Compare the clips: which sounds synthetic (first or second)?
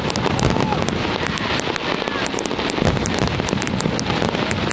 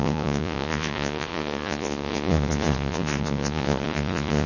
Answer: second